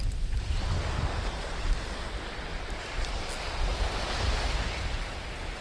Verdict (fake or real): real